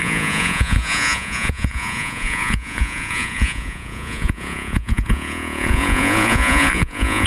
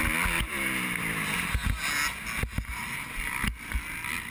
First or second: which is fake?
first